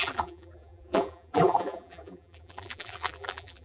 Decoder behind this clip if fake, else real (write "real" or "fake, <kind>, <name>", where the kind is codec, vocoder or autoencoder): fake, vocoder, BigVGAN v2